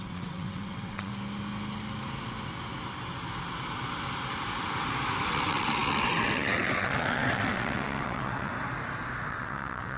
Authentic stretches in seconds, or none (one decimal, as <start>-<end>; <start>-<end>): 1.1-5.3; 8.5-9.3